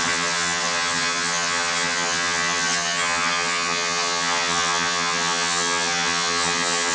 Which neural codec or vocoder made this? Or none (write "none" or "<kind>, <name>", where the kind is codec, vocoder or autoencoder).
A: vocoder, HiFi-GAN